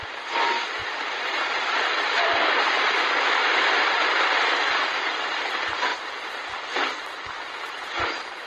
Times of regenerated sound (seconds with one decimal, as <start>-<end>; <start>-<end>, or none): 0.0-5.9; 7.3-8.5